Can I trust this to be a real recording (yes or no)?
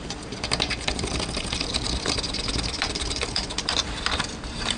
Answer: no